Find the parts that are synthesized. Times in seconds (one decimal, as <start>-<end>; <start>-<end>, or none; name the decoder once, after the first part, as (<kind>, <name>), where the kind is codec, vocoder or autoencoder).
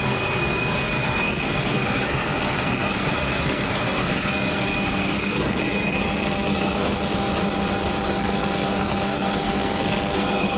0.0-7.4 (codec, SNAC); 8.0-10.6